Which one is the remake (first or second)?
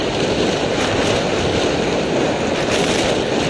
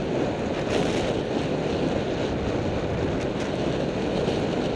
first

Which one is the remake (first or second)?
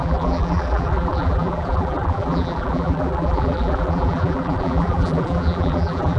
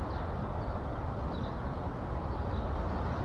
first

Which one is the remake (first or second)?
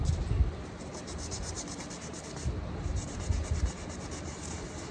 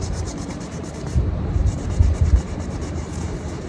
second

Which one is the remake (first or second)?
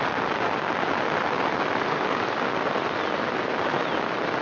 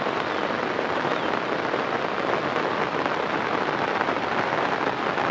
second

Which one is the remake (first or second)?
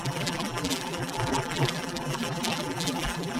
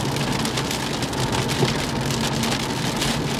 first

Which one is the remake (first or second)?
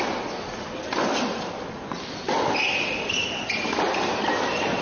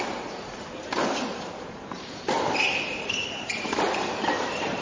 second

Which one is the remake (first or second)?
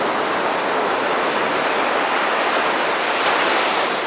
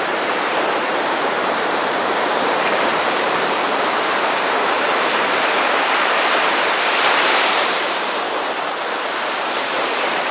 second